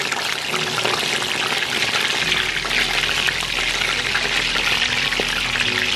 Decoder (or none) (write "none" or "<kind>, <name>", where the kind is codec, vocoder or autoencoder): none